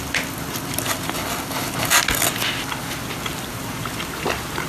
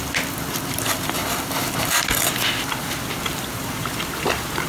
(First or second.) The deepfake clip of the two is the second